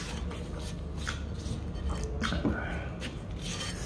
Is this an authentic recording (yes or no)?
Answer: yes